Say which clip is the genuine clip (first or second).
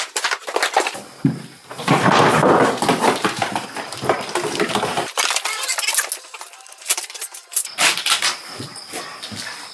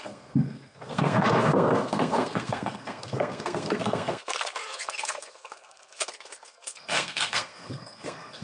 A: first